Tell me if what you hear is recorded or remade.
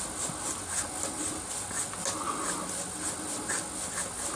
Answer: recorded